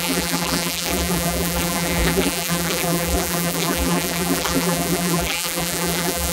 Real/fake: fake